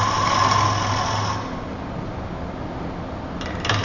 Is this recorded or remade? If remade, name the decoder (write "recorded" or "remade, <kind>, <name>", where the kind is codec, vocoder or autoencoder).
recorded